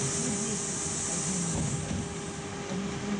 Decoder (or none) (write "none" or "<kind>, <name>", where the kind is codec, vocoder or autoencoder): none